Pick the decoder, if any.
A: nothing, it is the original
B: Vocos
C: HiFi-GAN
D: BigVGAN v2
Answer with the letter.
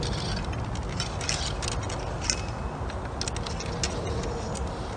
A